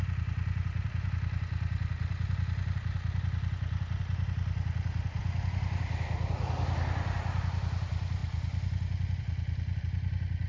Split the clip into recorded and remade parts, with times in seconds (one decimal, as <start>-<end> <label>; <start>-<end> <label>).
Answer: 0.0-10.5 recorded